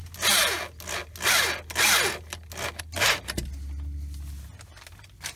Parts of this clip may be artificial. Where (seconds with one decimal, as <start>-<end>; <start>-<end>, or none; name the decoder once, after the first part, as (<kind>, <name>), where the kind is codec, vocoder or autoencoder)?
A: none